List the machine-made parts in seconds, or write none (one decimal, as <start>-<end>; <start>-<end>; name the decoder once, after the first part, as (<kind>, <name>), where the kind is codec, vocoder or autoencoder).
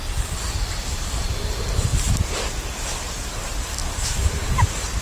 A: none